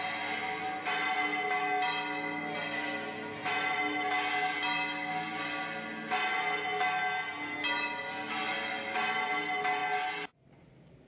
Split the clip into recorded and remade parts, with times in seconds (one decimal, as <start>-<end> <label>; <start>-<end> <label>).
0.0-11.1 recorded